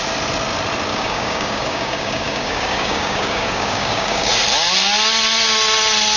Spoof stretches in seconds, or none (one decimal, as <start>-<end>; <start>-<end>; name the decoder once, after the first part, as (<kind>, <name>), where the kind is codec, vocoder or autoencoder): 0.9-4.3 (codec, DAC)